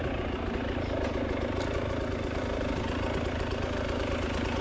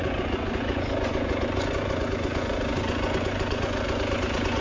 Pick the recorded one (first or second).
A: first